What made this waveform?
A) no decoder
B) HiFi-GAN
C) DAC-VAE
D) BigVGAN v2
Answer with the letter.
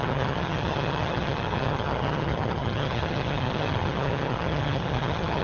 B